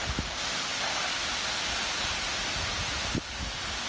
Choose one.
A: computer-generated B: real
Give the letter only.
B